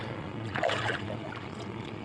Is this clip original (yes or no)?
no